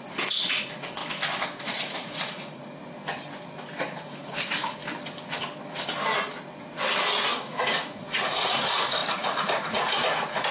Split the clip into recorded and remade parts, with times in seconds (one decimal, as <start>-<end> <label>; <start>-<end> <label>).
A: 0.0-1.0 remade; 1.0-1.6 recorded; 1.6-2.8 remade; 2.8-3.8 recorded; 3.8-4.8 remade; 4.8-7.3 recorded; 7.3-10.5 remade